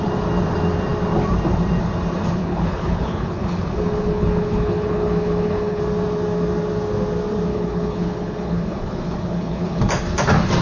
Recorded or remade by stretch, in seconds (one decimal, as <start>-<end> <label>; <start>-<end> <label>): 0.0-2.4 recorded; 2.4-5.8 remade; 5.8-7.5 recorded; 7.5-9.8 remade; 9.8-10.6 recorded